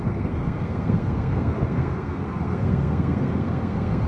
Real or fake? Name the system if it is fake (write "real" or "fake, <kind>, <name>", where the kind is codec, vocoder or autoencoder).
fake, codec, SNAC